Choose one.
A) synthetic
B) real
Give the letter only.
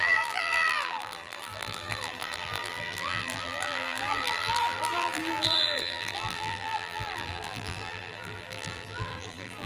A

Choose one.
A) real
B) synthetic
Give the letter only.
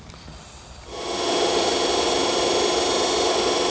A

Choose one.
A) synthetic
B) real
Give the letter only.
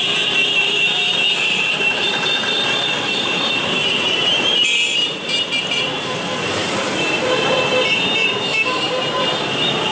A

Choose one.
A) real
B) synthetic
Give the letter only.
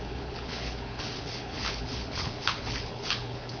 B